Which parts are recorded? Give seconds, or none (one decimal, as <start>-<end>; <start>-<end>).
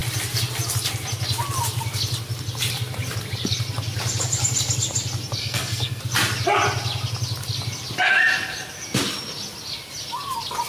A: 0.0-5.4; 6.0-10.7